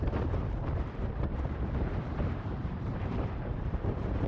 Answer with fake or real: fake